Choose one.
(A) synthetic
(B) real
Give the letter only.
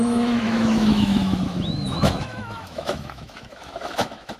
A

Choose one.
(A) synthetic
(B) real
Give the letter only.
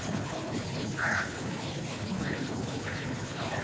A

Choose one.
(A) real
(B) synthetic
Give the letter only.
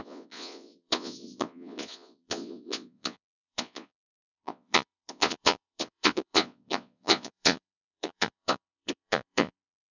B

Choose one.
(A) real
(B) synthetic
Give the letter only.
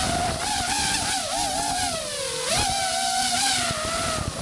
A